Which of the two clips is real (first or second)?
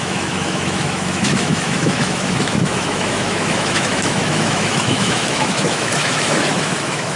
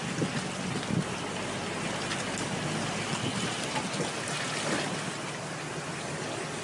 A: second